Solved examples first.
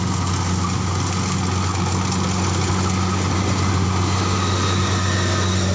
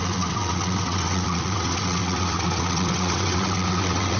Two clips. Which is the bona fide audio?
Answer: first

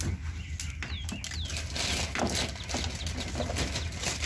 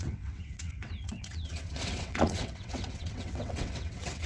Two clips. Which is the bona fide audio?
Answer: first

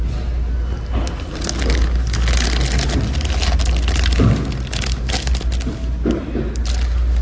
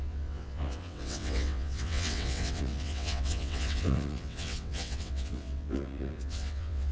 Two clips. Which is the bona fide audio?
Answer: first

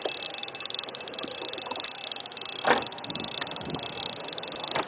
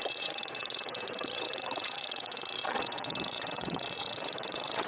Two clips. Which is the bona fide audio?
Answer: first